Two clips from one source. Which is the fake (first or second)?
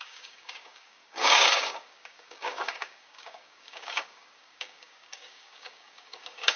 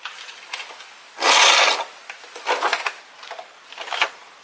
first